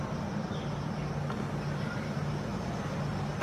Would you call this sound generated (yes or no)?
no